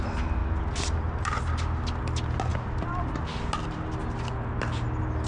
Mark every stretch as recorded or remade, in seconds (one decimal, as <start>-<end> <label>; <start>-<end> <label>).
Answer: 0.0-5.3 recorded